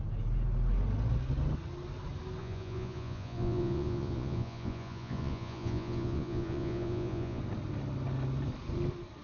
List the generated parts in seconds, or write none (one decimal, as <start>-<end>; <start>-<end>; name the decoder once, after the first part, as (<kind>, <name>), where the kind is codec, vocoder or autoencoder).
2.4-7.4 (vocoder, Vocos)